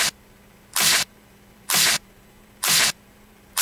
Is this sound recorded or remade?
remade